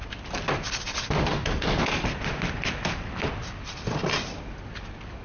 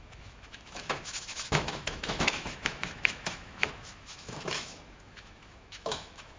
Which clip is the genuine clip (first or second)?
first